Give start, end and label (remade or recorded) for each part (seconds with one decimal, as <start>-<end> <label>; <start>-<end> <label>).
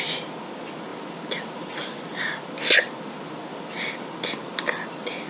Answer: 0.0-5.3 recorded